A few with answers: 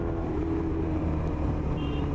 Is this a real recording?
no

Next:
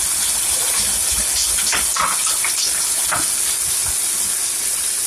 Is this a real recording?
yes